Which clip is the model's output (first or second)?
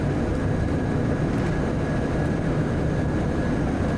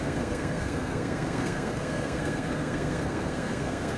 second